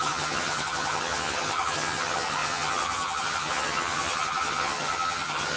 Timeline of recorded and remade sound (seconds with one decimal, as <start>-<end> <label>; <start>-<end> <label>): 0.0-5.6 remade